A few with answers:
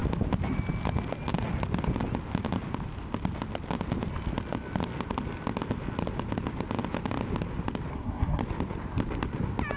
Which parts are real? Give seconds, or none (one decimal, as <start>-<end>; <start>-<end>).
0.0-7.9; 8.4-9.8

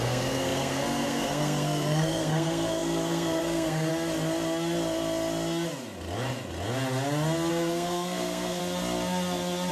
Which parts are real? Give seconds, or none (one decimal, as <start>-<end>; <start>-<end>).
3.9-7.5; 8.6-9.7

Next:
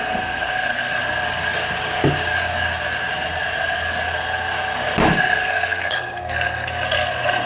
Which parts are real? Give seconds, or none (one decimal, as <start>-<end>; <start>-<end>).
1.0-5.2

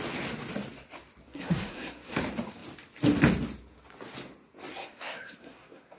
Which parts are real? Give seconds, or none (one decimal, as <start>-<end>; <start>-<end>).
0.0-1.3; 2.2-4.7

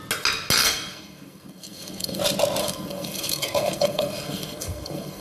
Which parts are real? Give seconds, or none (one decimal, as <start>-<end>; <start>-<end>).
0.0-0.6; 2.2-2.6